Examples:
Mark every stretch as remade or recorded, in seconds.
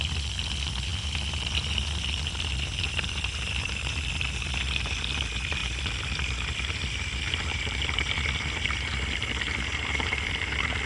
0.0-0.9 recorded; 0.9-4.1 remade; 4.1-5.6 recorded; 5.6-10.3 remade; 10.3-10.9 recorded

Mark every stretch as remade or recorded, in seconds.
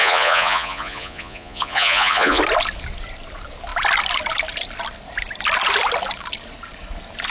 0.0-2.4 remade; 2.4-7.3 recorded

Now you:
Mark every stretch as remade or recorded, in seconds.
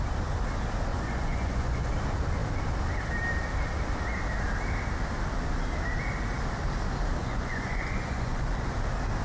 0.0-0.9 recorded; 0.9-1.9 remade; 1.9-7.2 recorded; 7.2-8.7 remade; 8.7-9.2 recorded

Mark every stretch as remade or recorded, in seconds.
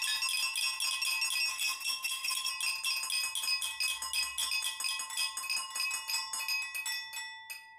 0.0-1.5 recorded; 1.5-2.5 remade; 2.5-7.8 recorded